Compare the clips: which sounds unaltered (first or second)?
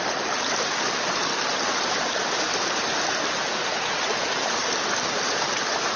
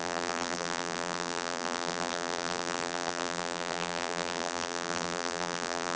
first